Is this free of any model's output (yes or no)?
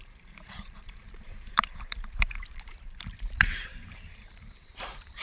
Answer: no